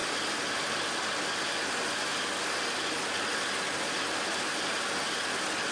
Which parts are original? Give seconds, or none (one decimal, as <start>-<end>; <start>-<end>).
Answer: 0.0-5.7